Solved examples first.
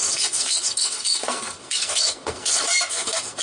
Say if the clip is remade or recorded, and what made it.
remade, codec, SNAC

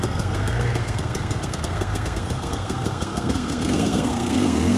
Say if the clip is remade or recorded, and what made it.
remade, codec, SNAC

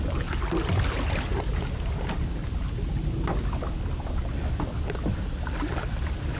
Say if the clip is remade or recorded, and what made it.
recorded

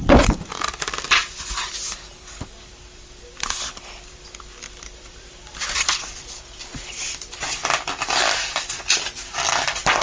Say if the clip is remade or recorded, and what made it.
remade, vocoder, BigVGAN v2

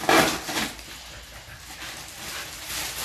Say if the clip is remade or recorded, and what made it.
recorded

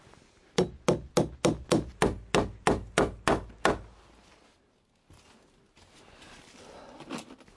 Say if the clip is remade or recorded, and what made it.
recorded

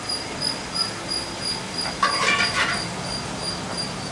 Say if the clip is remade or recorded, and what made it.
remade, vocoder, BigVGAN v2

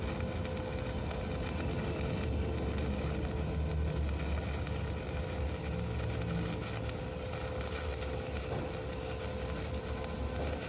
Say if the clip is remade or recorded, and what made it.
recorded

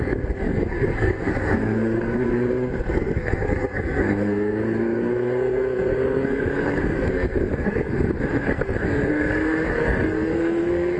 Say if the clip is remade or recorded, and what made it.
remade, codec, SNAC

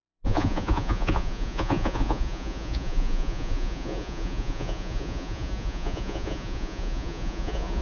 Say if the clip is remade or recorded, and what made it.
remade, vocoder, Vocos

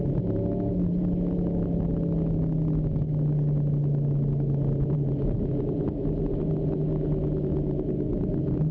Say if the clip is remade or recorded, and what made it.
recorded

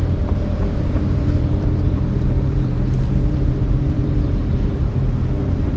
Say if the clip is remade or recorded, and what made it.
remade, vocoder, BigVGAN v2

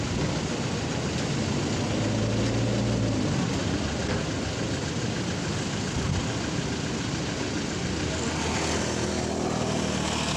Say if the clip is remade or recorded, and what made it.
recorded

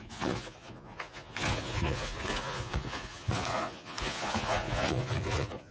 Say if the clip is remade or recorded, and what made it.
remade, vocoder, Vocos